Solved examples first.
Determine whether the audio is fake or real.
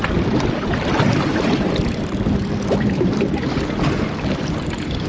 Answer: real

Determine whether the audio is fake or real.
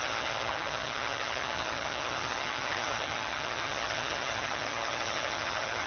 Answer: fake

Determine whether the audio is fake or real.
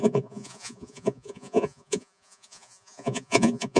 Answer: fake